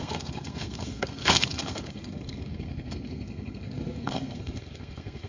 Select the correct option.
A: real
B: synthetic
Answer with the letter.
B